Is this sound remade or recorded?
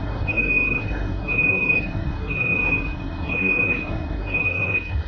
remade